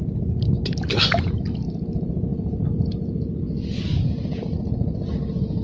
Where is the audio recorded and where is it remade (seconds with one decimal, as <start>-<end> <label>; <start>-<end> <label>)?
0.0-5.6 recorded